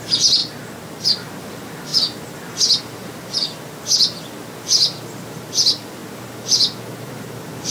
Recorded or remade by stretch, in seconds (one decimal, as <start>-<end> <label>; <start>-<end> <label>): 0.0-7.7 recorded